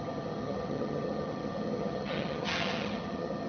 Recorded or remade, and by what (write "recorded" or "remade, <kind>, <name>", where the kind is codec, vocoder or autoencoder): remade, vocoder, HiFi-GAN